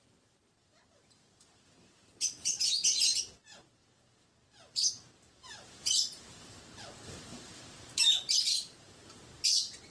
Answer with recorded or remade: remade